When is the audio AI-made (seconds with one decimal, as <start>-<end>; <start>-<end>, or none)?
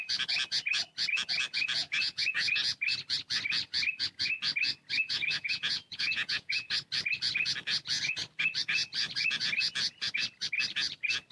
1.8-2.5; 5.0-6.7